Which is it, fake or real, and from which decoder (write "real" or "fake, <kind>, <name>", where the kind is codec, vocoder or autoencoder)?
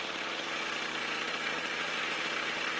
fake, vocoder, BigVGAN v2